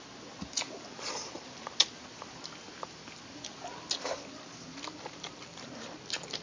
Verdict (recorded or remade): recorded